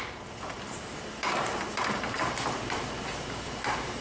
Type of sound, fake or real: fake